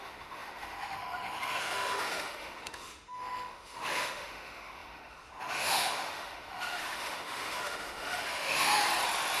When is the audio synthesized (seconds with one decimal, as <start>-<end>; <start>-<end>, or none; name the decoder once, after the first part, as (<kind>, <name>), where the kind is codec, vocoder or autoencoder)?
0.0-8.8 (autoencoder, DAC-VAE)